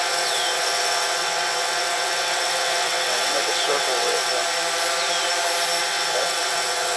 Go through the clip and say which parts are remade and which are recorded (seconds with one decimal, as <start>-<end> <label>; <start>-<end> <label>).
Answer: 0.0-4.3 remade; 4.3-5.8 recorded; 5.8-7.0 remade